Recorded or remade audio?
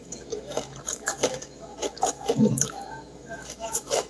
remade